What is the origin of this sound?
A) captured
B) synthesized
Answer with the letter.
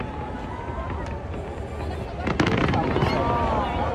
A